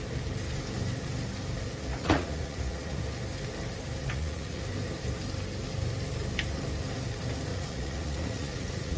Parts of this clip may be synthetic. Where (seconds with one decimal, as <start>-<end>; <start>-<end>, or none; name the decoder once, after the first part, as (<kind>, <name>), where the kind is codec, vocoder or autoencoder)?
1.9-3.0 (vocoder, Vocos); 4.0-4.6; 7.5-9.0